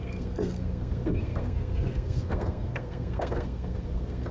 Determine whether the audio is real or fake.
fake